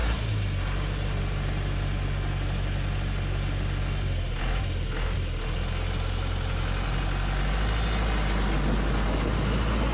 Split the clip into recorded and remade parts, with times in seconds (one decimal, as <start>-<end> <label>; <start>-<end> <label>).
0.0-9.9 recorded